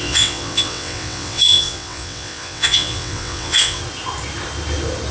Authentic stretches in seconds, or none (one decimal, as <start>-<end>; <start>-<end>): 3.8-5.1